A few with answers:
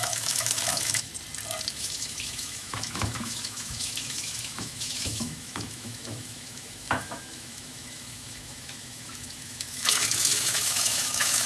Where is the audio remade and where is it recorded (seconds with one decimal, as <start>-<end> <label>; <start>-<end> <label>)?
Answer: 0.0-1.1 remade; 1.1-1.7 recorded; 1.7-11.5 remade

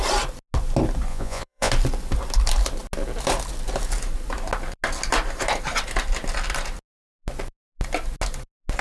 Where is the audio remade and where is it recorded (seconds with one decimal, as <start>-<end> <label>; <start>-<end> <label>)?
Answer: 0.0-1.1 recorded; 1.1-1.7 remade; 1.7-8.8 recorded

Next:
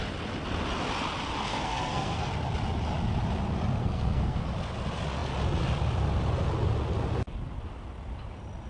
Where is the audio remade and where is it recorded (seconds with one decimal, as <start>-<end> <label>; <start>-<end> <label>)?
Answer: 0.0-1.5 recorded; 1.5-2.3 remade; 2.3-3.8 recorded; 3.8-4.4 remade; 4.4-8.7 recorded

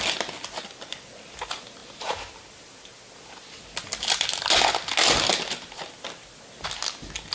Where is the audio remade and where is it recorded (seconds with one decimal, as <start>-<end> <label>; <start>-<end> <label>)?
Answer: 0.0-7.3 recorded

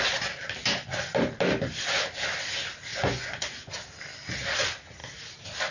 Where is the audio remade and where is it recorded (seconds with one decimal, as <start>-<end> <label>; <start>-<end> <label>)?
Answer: 0.0-2.9 recorded; 2.9-3.7 remade; 3.7-5.7 recorded